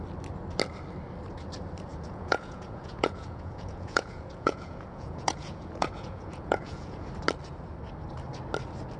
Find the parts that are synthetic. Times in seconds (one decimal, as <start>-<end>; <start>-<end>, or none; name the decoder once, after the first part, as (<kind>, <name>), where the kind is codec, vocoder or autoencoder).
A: 1.9-7.1 (vocoder, Vocos)